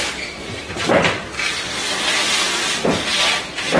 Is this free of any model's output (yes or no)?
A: no